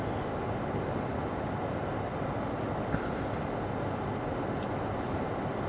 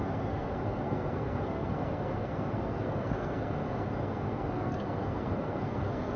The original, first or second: first